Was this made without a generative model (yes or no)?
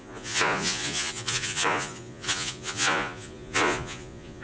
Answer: no